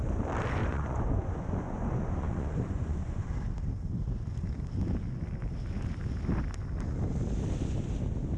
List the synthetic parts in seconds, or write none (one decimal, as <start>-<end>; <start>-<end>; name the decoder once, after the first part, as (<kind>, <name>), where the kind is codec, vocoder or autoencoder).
0.6-3.3 (vocoder, Vocos)